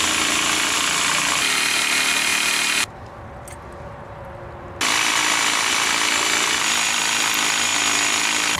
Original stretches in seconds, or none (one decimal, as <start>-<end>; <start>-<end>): 0.0-8.6